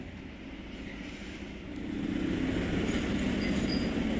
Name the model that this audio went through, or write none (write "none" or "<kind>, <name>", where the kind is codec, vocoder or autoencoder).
none